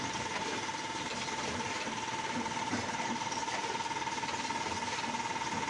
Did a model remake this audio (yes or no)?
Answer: no